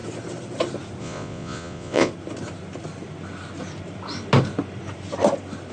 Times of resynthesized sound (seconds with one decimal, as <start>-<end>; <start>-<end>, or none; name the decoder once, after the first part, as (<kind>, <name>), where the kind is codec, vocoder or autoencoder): 1.0-2.1 (vocoder, Vocos)